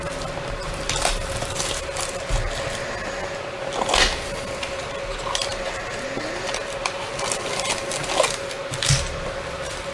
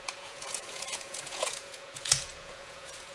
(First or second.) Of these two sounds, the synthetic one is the second